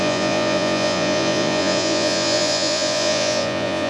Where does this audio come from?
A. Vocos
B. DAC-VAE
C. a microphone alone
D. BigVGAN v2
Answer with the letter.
A